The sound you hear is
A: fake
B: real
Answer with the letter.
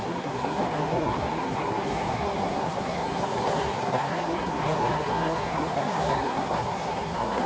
A